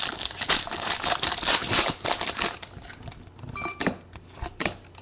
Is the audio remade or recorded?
recorded